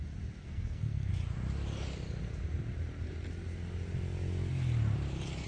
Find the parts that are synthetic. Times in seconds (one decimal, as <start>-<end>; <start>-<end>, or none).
0.4-1.1